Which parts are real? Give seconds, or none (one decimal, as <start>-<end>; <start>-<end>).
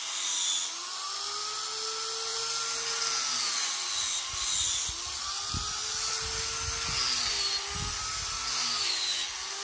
0.0-9.6